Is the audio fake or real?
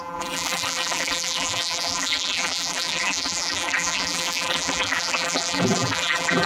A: fake